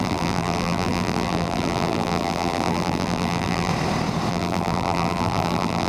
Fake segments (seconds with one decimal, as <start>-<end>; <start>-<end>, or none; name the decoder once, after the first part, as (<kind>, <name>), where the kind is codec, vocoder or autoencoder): 0.0-3.7 (vocoder, BigVGAN v2); 4.3-5.9